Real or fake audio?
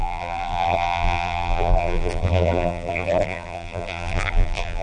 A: fake